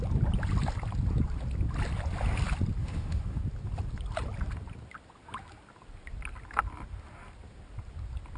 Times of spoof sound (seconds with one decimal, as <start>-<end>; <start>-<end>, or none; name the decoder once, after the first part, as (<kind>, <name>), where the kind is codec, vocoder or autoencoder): 2.8-3.4 (autoencoder, DAC-VAE)